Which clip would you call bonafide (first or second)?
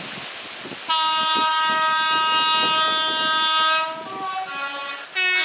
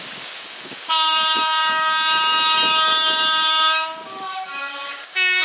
first